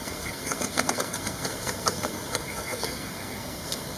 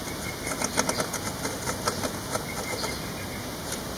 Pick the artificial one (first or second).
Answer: first